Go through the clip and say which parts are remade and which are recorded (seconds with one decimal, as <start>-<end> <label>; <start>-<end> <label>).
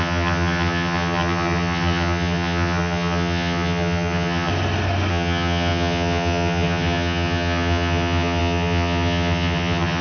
0.0-4.5 remade; 4.5-5.1 recorded; 5.1-10.0 remade